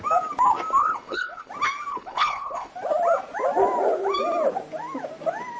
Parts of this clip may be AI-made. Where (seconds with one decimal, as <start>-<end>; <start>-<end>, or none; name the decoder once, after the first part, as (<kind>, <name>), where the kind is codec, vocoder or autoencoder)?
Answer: 0.8-1.5 (codec, HILCodec); 1.9-2.7